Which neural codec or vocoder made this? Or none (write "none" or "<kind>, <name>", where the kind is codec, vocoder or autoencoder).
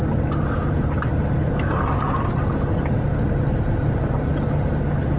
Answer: none